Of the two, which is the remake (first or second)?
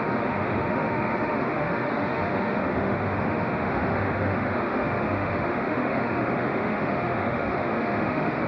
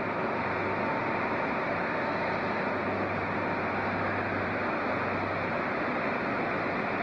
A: first